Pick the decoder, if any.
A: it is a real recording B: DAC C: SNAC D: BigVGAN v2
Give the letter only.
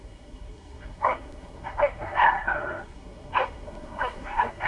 C